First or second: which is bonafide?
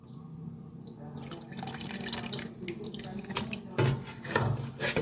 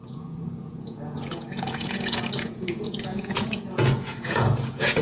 first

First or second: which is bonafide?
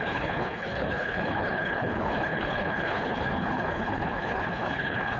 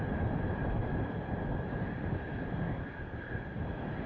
second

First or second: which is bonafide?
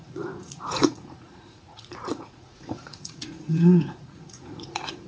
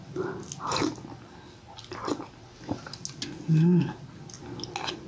second